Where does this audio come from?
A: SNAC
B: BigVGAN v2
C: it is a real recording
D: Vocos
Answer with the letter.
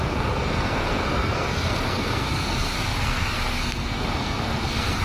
A